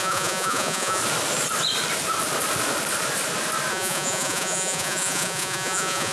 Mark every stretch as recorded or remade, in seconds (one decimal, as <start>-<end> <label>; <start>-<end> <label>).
0.0-1.0 remade; 1.0-3.7 recorded; 3.7-6.1 remade